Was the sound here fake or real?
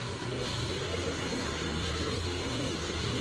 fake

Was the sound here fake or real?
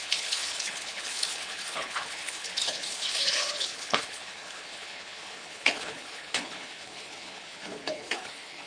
fake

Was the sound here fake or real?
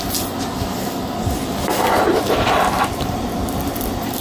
fake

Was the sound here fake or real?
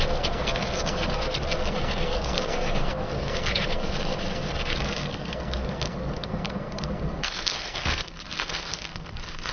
fake